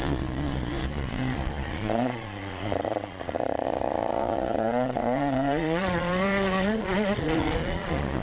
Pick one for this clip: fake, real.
fake